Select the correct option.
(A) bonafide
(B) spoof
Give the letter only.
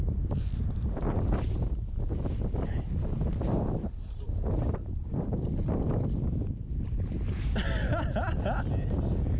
A